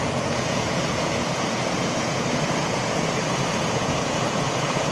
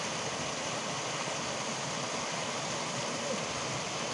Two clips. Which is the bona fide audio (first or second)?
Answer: second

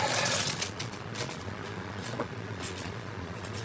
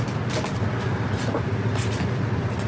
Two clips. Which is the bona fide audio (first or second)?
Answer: second